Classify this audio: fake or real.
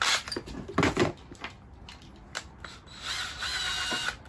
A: real